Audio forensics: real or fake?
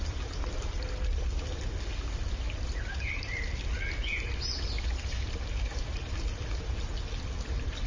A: real